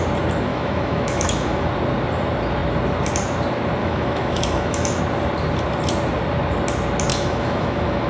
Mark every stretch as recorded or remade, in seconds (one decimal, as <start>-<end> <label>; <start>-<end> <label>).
0.0-0.5 recorded; 0.5-1.7 remade; 1.7-3.8 recorded; 3.8-5.0 remade; 5.0-7.1 recorded; 7.1-8.1 remade